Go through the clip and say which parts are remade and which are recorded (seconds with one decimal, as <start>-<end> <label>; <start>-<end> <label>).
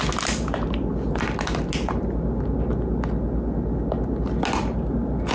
0.0-5.3 recorded